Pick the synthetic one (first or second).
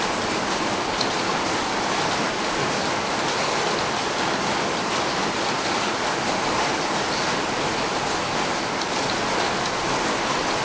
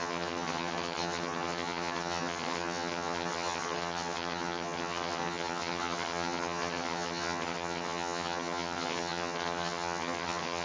second